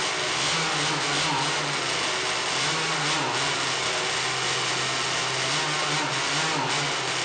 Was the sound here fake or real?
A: real